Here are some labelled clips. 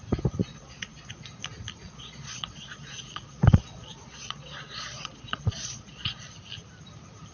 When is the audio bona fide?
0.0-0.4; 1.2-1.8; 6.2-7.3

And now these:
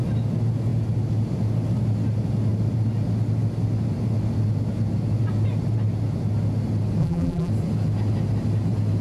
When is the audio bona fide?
0.0-7.0; 7.5-9.0

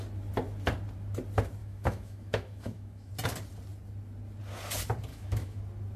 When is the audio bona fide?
0.0-1.6; 3.1-5.1; 5.6-6.0

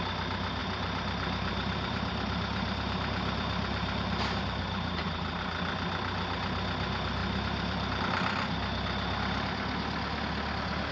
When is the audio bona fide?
0.0-0.6; 5.4-7.2; 8.0-10.9

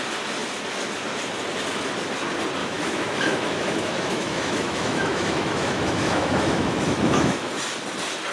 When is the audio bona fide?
0.0-2.6; 7.5-8.3

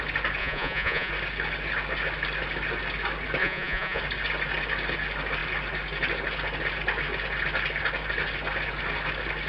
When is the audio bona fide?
0.0-0.4; 1.1-3.4; 4.0-9.5

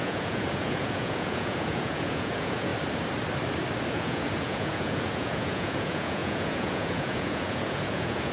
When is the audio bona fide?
2.7-3.9